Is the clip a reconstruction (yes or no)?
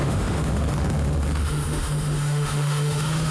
yes